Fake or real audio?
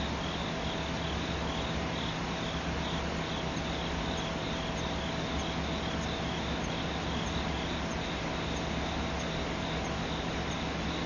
real